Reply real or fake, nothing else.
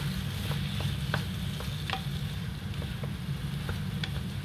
real